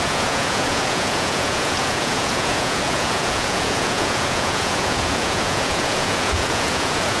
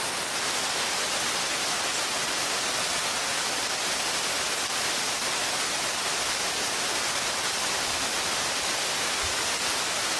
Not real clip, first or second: first